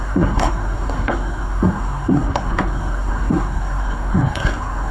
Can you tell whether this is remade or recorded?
remade